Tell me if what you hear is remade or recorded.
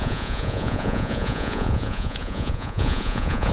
remade